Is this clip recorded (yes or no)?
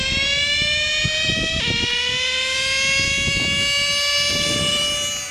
yes